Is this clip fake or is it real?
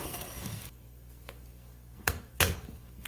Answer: fake